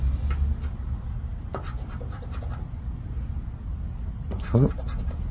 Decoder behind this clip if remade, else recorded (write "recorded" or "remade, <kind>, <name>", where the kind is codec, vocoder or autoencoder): recorded